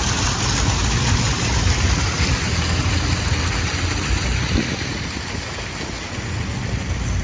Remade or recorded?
recorded